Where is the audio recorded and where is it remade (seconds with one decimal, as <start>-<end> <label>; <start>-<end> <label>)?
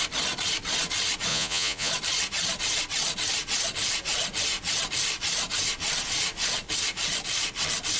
0.0-1.3 recorded; 1.3-1.9 remade; 1.9-8.0 recorded